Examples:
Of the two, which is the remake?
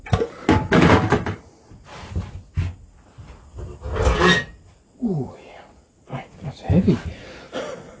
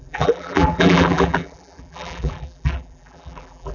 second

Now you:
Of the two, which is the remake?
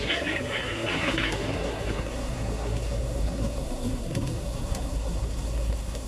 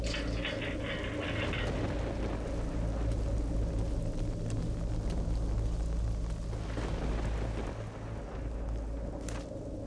first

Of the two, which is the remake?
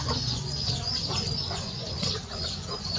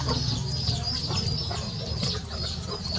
first